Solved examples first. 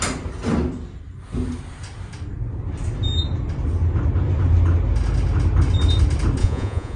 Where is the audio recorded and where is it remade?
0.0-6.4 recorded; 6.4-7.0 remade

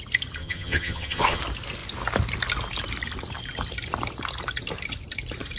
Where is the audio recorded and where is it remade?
0.0-0.4 recorded; 0.4-1.4 remade; 1.4-5.6 recorded

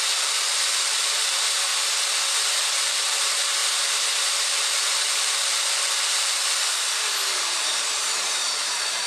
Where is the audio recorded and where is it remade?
0.0-1.7 remade; 1.7-3.0 recorded; 3.0-9.1 remade